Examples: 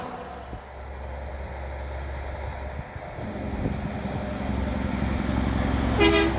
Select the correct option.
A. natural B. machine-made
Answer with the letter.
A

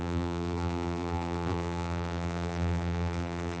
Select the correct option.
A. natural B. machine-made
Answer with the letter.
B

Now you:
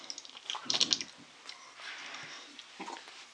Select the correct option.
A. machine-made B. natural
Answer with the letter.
B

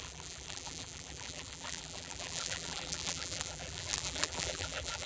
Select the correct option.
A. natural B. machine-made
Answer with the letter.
B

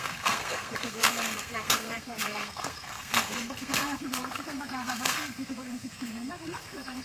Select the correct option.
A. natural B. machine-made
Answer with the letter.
B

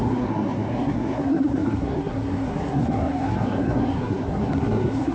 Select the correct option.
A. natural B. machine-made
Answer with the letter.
B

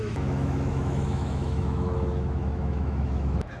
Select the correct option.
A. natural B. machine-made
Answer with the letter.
B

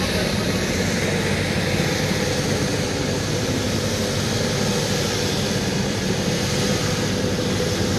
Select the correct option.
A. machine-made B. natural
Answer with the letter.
B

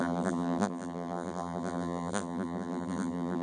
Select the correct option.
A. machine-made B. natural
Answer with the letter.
A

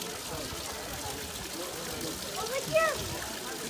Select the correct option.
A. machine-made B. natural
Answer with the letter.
B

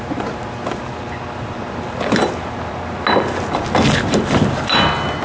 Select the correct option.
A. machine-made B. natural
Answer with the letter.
B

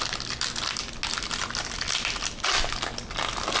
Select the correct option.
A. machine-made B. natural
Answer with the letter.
B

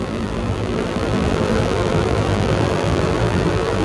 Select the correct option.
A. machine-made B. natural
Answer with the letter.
A